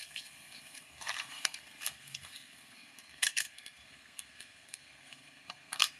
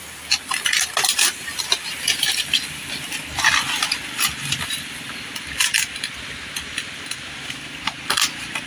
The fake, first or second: first